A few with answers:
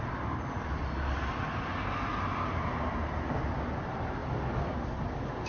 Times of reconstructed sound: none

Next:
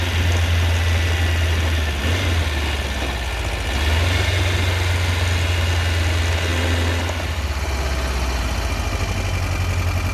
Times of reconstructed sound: none

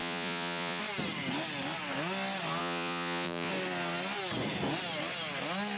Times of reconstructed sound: 0.0-0.8 (vocoder, Vocos); 2.6-3.5